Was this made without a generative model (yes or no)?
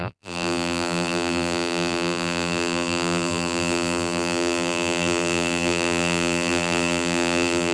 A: no